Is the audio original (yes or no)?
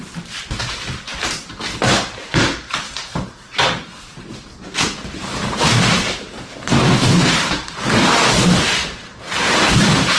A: no